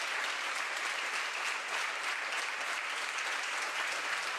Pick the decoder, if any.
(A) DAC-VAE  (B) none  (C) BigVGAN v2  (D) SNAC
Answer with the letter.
B